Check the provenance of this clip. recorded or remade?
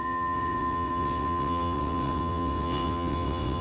remade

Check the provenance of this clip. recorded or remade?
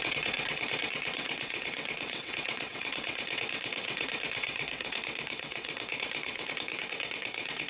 remade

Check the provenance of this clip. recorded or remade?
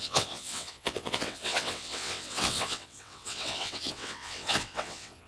remade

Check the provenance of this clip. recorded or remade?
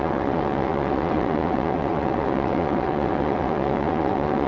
remade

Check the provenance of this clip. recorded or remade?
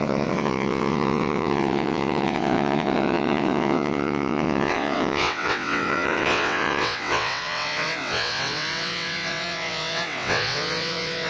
remade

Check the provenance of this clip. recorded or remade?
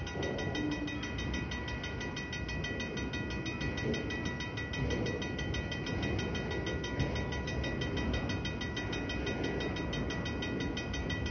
recorded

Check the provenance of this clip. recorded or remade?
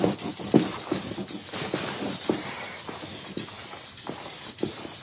recorded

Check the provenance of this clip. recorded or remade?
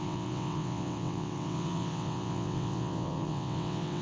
remade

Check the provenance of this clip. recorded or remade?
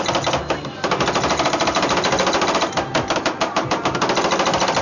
recorded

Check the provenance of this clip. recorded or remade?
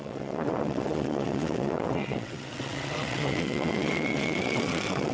remade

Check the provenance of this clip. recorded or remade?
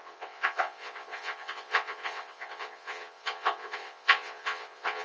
remade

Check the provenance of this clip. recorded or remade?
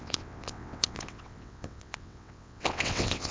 remade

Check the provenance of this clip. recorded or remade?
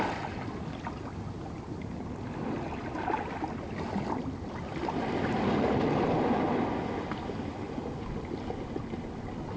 recorded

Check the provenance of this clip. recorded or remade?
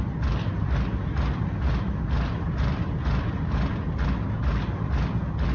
recorded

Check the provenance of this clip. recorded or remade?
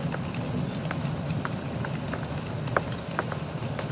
recorded